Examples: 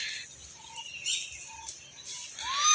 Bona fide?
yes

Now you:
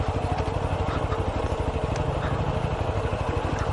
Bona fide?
yes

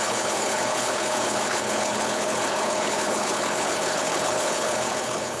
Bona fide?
no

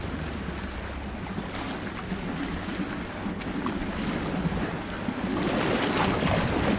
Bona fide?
yes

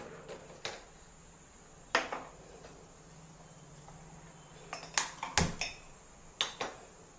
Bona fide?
yes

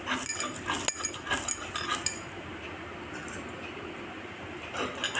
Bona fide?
yes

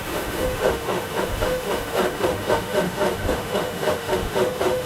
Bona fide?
no